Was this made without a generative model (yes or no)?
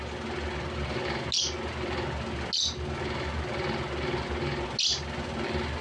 yes